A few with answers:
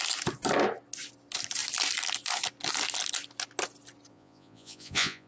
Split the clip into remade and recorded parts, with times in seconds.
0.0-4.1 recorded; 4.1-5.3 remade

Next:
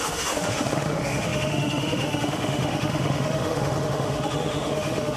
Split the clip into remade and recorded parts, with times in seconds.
0.0-5.2 remade